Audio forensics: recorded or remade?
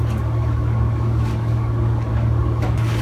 remade